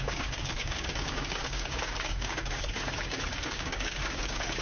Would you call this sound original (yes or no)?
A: no